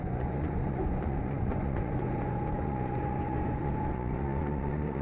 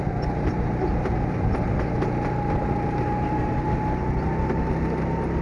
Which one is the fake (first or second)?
first